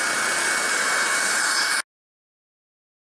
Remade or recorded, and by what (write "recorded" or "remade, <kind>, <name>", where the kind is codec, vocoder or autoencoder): recorded